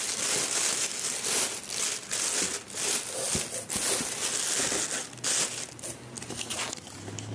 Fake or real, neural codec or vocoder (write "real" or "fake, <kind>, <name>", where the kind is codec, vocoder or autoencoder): real